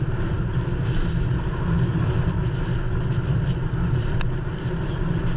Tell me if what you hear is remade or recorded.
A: recorded